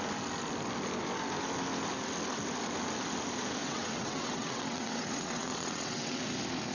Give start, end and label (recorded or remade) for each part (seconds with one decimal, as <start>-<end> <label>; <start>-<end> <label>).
0.0-3.6 recorded; 3.6-6.2 remade; 6.2-6.7 recorded